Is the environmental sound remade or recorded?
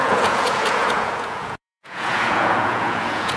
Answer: remade